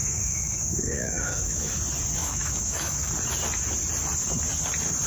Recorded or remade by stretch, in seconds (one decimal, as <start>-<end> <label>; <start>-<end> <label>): 0.0-1.7 remade; 1.7-2.2 recorded; 2.2-3.1 remade; 3.1-5.1 recorded